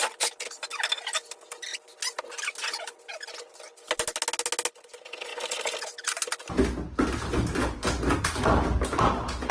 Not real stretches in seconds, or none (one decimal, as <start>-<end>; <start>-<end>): 1.7-2.2